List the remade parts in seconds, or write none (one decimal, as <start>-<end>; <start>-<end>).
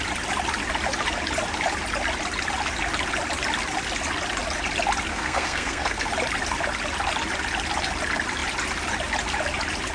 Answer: 5.1-6.1